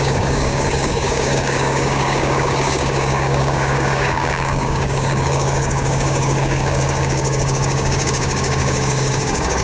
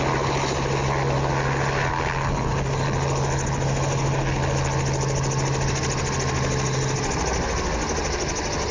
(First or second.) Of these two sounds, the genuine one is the second